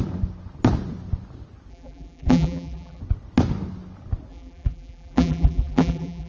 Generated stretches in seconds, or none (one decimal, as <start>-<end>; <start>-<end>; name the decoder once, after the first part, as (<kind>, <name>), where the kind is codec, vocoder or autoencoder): 1.7-3.0 (vocoder, BigVGAN v2); 4.3-6.3

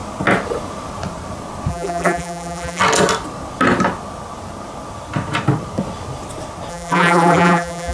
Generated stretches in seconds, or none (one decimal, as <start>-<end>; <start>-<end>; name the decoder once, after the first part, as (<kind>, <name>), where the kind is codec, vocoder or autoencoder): 1.7-2.8 (vocoder, BigVGAN v2); 6.7-7.9